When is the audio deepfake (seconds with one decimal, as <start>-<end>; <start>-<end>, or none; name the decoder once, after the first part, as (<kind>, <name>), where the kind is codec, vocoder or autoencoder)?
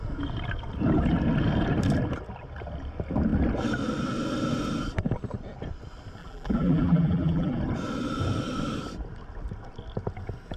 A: 6.2-7.6 (vocoder, BigVGAN v2)